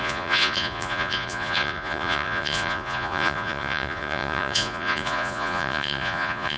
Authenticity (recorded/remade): remade